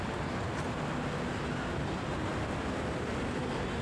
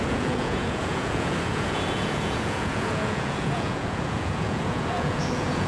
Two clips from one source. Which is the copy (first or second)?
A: second